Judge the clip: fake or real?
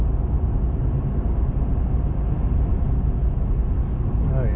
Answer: real